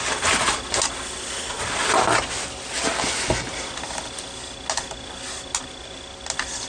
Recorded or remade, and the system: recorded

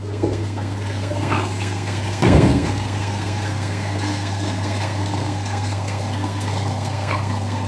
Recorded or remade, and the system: remade, codec, SNAC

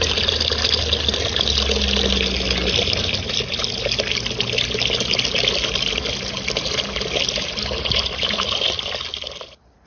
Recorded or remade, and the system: recorded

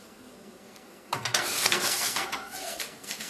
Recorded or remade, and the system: remade, codec, SNAC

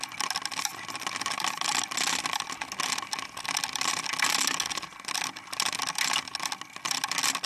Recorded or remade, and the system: recorded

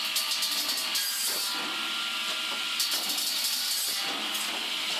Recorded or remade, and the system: recorded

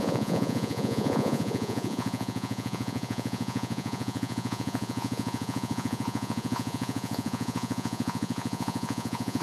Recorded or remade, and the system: remade, vocoder, Vocos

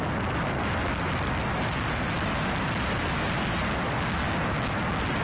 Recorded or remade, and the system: recorded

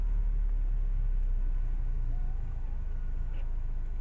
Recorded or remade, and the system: recorded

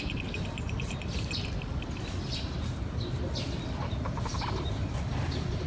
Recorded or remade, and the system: recorded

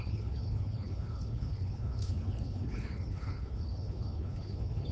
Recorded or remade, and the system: remade, codec, HILCodec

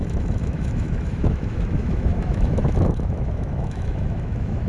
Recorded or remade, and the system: remade, autoencoder, DAC-VAE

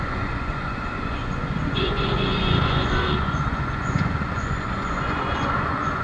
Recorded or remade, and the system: remade, vocoder, Vocos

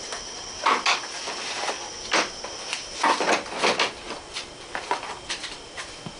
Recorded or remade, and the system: recorded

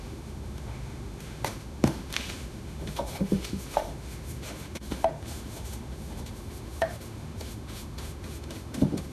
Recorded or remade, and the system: remade, autoencoder, DAC-VAE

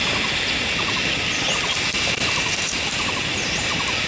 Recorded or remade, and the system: recorded